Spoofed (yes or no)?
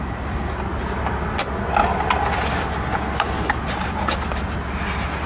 no